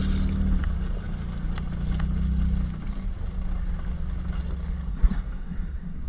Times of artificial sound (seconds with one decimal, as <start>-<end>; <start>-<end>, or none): 4.9-6.1